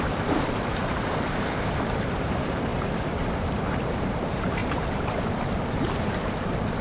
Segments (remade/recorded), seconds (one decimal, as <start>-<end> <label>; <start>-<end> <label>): 0.0-2.7 remade; 2.7-3.4 recorded; 3.4-6.8 remade